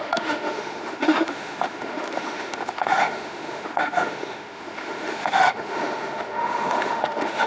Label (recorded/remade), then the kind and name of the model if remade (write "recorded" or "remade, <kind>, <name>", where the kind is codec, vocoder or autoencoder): remade, autoencoder, DAC-VAE